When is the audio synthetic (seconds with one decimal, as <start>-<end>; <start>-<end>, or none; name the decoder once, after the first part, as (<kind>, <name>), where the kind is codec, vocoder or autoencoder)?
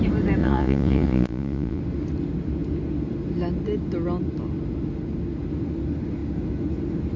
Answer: 0.4-1.8 (vocoder, Vocos)